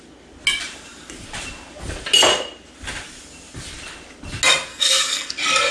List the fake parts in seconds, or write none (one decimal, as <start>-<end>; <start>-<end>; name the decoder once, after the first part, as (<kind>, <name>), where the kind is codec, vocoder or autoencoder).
4.7-5.3 (codec, SNAC)